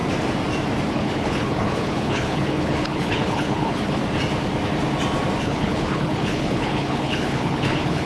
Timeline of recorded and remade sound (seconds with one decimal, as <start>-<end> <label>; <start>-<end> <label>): 0.0-0.9 recorded; 0.9-4.0 remade; 4.0-5.4 recorded; 5.4-8.1 remade